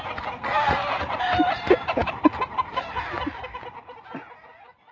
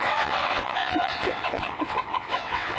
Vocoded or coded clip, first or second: second